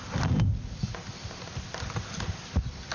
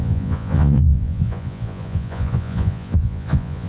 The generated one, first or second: second